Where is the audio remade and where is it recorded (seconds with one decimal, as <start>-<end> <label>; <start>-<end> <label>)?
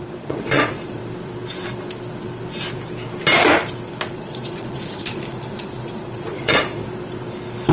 0.0-1.0 remade; 1.0-4.1 recorded; 4.1-6.8 remade; 6.8-7.7 recorded